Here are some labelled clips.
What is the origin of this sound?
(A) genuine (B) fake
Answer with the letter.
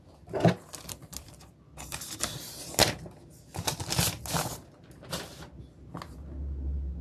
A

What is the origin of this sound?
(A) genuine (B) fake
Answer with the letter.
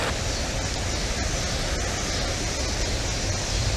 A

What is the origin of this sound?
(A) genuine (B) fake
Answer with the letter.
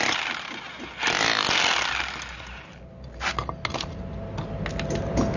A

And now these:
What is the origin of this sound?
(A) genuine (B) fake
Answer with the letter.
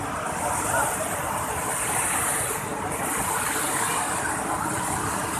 A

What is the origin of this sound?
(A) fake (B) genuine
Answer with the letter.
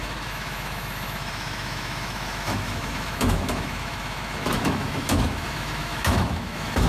A